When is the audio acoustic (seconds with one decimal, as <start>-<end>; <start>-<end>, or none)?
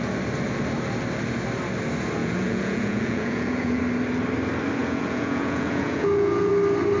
0.0-2.2; 3.8-4.8; 6.5-7.0